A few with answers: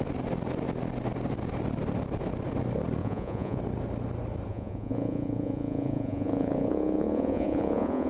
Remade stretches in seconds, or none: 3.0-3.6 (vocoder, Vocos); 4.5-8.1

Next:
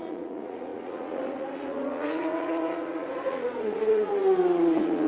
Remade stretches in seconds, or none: 0.0-5.1 (vocoder, Vocos)